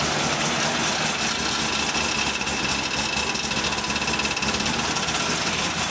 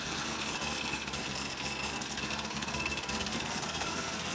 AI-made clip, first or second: second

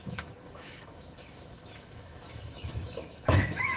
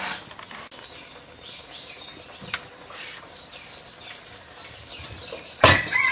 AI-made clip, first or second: first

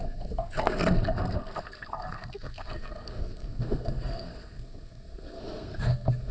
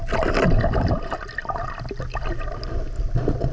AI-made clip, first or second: first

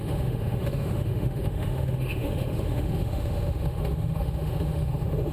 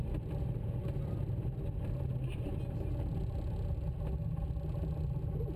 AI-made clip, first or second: first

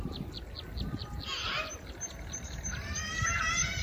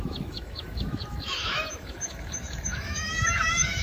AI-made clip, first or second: second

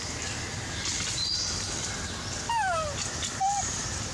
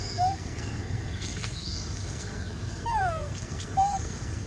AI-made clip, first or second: second